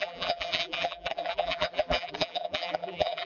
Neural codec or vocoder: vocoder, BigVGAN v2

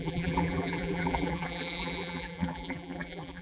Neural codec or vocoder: vocoder, BigVGAN v2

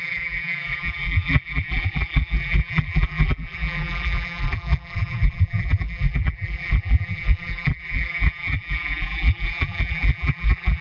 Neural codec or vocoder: vocoder, BigVGAN v2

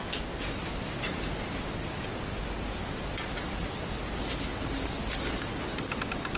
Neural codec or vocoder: none